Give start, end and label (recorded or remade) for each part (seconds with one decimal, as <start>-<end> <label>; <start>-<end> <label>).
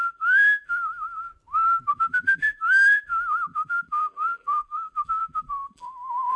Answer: 0.0-1.3 remade; 1.3-1.9 recorded; 1.9-6.4 remade